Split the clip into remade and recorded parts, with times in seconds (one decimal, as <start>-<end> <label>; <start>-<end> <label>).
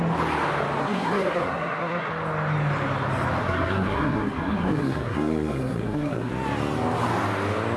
0.0-0.8 recorded; 0.8-2.1 remade; 2.1-3.4 recorded; 3.4-6.3 remade; 6.3-7.8 recorded